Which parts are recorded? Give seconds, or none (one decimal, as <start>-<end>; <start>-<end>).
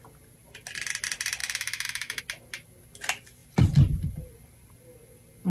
0.0-1.4; 2.2-5.5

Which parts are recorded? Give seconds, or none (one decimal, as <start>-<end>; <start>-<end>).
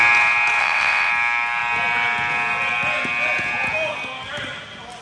0.0-0.6; 1.1-5.0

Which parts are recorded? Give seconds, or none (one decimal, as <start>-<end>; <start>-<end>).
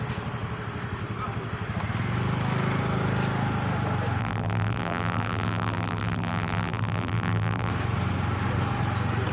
0.0-4.2; 7.7-9.3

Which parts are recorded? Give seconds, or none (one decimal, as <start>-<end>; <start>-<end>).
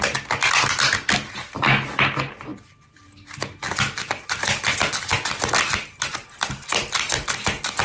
0.0-7.8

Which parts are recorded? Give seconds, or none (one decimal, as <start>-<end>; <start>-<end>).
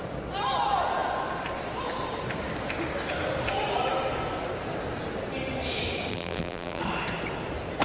0.0-6.1; 6.8-7.8